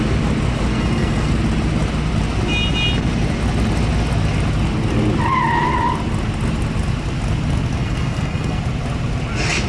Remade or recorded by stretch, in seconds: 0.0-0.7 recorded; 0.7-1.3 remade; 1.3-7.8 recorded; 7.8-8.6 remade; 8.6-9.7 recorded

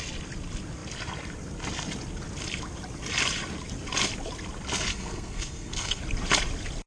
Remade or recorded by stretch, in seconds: 0.0-4.9 recorded; 4.9-6.0 remade; 6.0-6.9 recorded

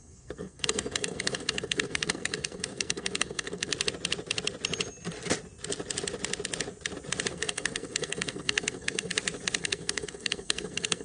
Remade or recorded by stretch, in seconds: 0.0-3.7 remade; 3.7-7.3 recorded; 7.3-9.1 remade; 9.1-9.6 recorded; 9.6-11.0 remade

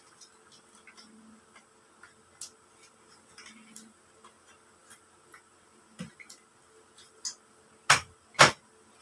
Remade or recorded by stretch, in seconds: 0.0-9.0 recorded